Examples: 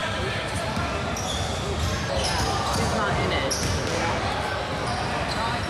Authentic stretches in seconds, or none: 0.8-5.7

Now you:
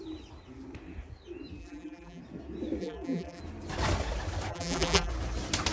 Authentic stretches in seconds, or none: 0.0-1.6; 2.2-2.8; 3.4-4.5; 5.1-5.7

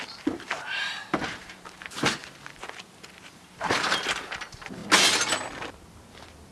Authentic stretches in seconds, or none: 2.2-3.2; 4.8-6.5

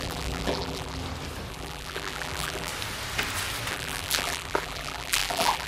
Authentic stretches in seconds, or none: 1.0-1.5; 2.7-3.7